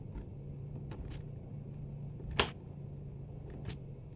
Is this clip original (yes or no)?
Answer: yes